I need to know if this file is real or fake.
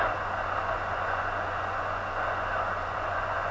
fake